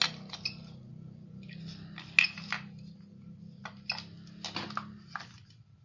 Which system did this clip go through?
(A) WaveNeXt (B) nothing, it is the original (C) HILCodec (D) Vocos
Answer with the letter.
B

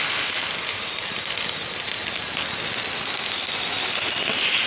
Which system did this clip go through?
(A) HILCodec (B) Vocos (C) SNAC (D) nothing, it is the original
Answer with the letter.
D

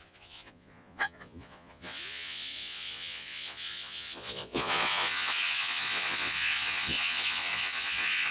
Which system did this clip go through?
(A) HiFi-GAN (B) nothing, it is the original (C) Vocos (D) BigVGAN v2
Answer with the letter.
C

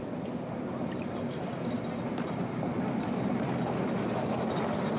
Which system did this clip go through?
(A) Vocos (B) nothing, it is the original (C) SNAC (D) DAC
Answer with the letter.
B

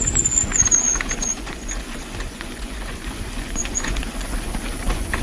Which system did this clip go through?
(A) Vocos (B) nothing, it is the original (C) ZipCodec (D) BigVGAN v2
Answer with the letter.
A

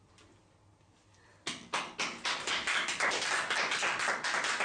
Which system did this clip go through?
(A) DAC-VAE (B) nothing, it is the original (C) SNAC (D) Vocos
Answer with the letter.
B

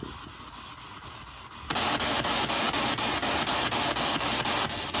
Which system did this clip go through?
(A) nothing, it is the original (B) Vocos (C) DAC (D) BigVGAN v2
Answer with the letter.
A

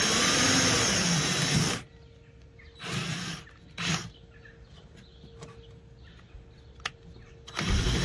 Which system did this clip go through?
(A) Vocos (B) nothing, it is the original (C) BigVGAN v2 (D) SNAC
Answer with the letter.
B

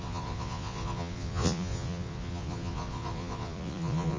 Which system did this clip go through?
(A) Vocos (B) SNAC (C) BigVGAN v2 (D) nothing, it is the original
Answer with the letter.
A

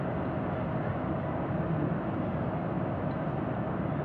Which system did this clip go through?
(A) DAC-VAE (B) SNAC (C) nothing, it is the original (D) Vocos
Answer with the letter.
C